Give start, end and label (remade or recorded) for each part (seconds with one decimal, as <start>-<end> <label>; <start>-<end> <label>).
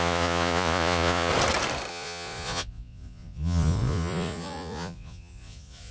0.0-1.3 remade; 1.3-1.9 recorded; 1.9-5.9 remade